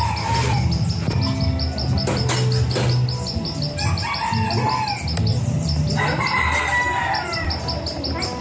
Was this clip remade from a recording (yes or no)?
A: no